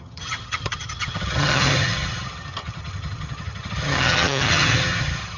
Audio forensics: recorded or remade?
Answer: remade